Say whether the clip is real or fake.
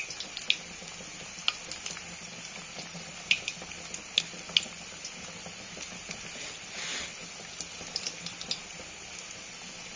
real